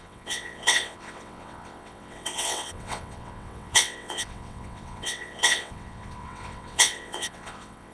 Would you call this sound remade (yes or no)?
yes